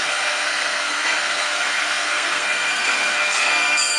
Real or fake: fake